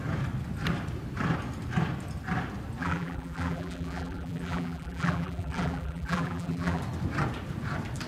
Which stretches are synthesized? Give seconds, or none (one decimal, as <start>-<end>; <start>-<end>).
2.8-6.8